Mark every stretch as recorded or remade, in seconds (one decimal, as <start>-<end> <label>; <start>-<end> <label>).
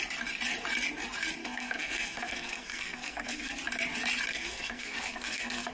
0.0-1.4 recorded; 1.4-3.5 remade; 3.5-4.3 recorded; 4.3-5.7 remade